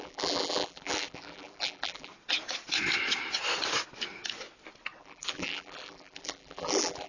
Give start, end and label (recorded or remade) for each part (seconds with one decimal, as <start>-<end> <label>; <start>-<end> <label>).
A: 0.0-2.1 remade; 2.1-5.0 recorded; 5.0-7.1 remade